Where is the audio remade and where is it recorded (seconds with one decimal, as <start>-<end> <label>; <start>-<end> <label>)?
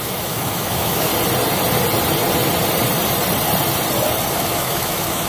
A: 0.0-1.1 remade; 1.1-4.3 recorded; 4.3-5.3 remade